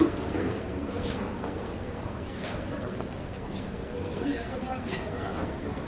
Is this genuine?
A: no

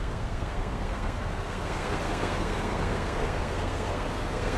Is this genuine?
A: no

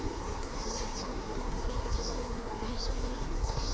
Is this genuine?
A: no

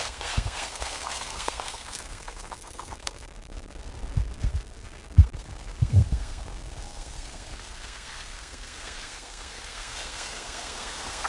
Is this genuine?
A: no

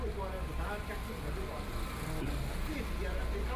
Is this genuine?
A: yes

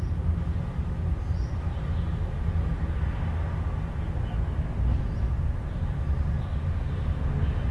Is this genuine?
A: yes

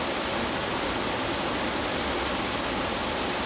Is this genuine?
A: yes